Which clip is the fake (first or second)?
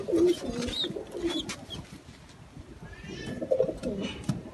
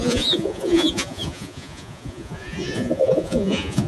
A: second